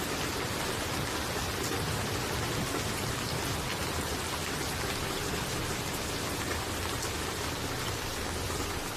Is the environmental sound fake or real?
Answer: real